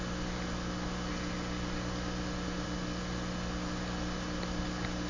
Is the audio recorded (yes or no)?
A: yes